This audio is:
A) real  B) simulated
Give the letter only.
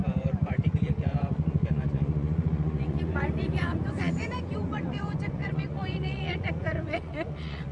B